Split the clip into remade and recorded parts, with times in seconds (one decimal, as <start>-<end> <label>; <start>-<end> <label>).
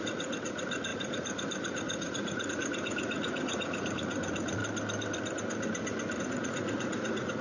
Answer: 0.0-4.6 remade; 4.6-6.2 recorded; 6.2-7.4 remade